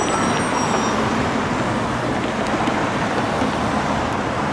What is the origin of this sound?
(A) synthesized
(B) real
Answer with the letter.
B